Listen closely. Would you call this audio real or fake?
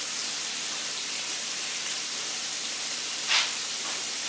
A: fake